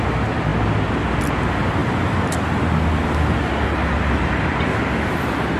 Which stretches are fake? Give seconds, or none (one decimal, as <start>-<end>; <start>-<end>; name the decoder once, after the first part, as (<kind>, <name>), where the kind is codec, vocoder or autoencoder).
none